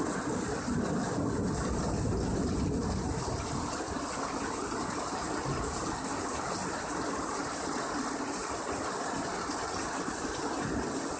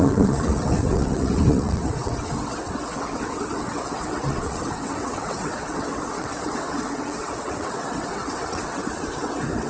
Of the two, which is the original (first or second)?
first